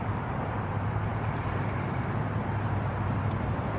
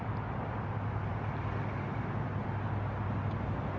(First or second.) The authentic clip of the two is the second